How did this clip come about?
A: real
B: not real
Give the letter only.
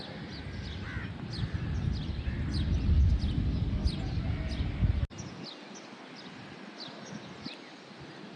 A